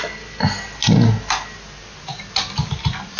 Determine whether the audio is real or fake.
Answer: real